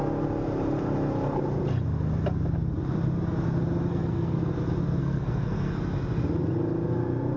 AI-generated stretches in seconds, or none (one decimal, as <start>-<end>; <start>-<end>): 3.9-4.5; 5.0-5.8